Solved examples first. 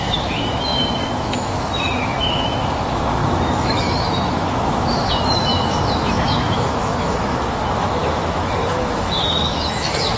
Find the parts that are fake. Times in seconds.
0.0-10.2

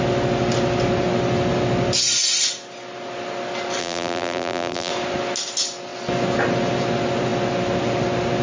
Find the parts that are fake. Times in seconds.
3.8-4.9

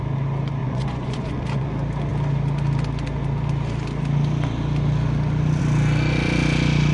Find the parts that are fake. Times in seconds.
0.6-1.7

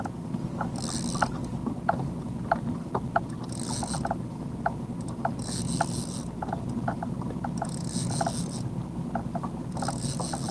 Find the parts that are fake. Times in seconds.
none